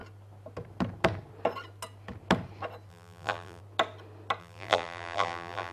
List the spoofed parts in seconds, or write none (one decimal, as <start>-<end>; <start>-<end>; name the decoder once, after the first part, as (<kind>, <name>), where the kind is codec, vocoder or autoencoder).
2.9-3.6 (vocoder, BigVGAN v2); 4.4-5.7